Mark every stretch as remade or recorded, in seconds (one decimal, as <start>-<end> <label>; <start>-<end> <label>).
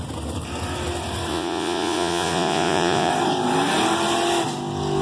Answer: 0.0-1.3 recorded; 1.3-3.1 remade; 3.1-5.0 recorded